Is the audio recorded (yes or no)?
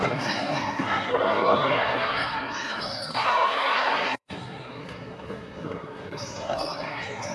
no